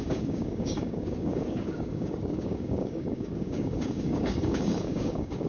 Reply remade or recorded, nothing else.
remade